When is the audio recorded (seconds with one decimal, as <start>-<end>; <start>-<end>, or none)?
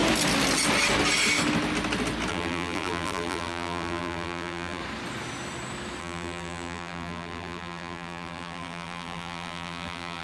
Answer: 0.0-2.3; 4.8-6.0